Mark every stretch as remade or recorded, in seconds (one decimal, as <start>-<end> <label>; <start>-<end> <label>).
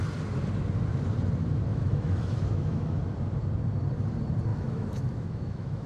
0.0-1.7 recorded; 1.7-3.0 remade; 3.0-4.5 recorded; 4.5-5.9 remade